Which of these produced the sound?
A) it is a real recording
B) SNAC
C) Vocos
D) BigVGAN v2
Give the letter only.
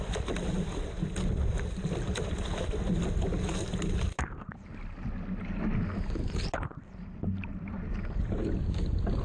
A